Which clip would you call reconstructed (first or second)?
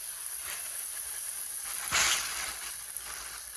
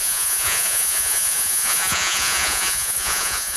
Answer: second